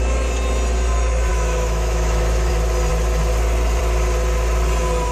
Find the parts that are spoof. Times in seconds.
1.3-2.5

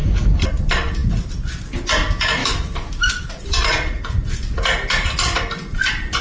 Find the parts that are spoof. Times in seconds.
2.4-3.4

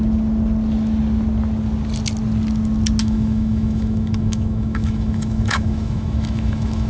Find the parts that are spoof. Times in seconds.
3.0-6.9

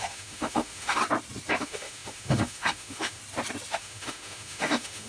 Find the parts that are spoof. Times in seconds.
0.0-1.0; 1.6-3.2; 3.7-5.1

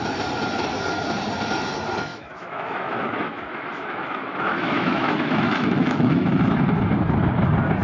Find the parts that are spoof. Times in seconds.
2.1-6.4